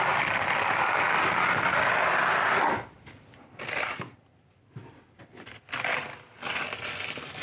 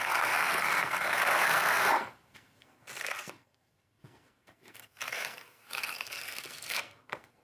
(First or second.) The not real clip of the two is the second